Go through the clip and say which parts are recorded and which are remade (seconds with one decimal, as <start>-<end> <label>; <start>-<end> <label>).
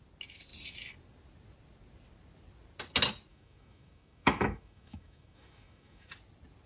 0.0-3.3 recorded; 3.3-6.1 remade; 6.1-6.7 recorded